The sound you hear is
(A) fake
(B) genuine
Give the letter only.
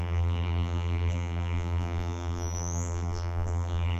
A